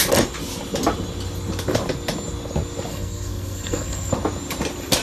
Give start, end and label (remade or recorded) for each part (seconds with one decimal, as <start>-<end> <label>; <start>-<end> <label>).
0.0-2.9 recorded; 2.9-4.1 remade; 4.1-5.0 recorded